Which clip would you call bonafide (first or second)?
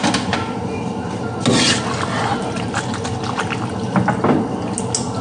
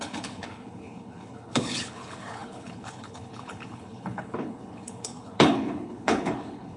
first